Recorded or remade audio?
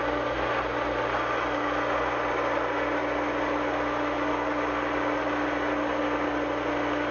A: recorded